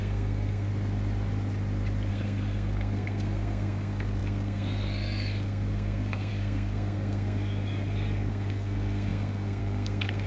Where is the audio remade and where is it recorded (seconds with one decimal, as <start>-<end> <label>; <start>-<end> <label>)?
0.0-0.7 remade; 0.7-2.1 recorded; 2.1-10.3 remade

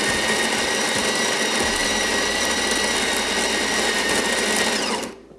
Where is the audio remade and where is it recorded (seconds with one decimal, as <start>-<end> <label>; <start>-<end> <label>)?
0.0-5.4 recorded

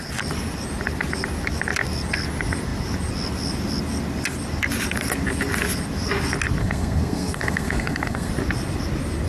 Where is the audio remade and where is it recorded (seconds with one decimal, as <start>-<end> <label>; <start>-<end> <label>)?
0.0-6.6 recorded; 6.6-8.3 remade; 8.3-9.3 recorded

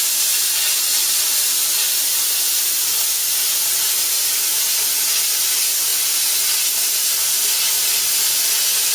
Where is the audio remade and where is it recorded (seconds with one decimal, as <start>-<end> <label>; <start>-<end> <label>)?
0.0-8.9 recorded

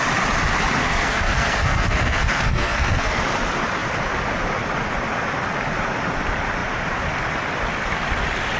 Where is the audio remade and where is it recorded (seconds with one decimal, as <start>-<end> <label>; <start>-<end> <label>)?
0.0-0.8 recorded; 0.8-3.2 remade; 3.2-8.6 recorded

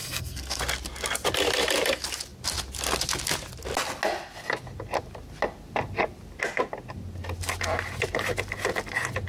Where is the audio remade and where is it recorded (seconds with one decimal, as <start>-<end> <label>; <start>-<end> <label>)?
0.0-0.6 remade; 0.6-9.3 recorded

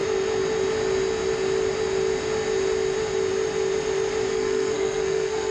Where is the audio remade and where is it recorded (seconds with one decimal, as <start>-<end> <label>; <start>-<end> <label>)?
0.0-4.3 recorded; 4.3-5.5 remade

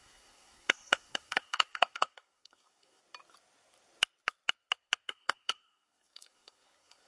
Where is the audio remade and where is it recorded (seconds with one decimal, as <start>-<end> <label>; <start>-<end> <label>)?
0.0-3.0 remade; 3.0-5.1 recorded; 5.1-7.1 remade